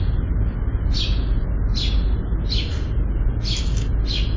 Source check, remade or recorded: recorded